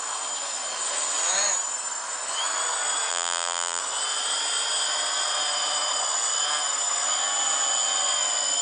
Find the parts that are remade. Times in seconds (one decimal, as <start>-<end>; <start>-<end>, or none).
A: 3.1-3.8